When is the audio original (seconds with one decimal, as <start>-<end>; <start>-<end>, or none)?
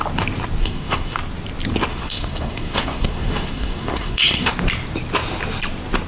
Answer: 0.0-0.6; 1.2-1.9; 4.5-6.1